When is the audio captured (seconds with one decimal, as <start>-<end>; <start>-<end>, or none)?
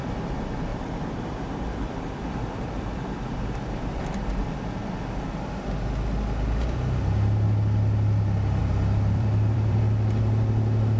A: 0.0-0.7; 4.0-8.6; 9.8-11.0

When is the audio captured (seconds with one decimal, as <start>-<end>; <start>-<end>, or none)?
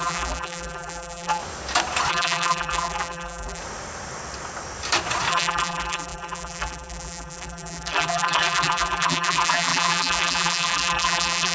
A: 1.4-2.1; 3.6-5.3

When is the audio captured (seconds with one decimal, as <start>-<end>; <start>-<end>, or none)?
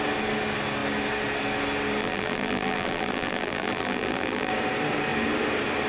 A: 0.0-2.0; 4.5-5.9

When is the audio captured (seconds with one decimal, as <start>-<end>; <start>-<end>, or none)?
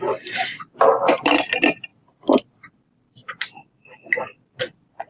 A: 0.0-5.1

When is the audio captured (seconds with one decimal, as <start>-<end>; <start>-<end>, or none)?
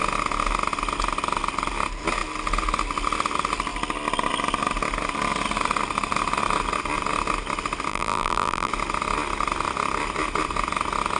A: 0.0-7.9; 8.7-11.2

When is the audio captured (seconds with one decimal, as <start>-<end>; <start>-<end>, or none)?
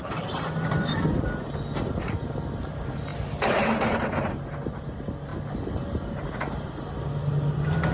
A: 0.0-7.9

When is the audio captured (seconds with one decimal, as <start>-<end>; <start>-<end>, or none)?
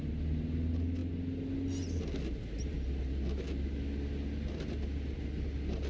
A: 0.0-5.9